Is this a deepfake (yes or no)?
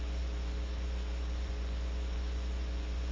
yes